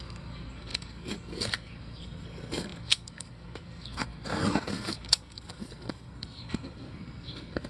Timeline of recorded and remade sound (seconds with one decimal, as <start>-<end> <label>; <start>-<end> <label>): 0.0-7.7 remade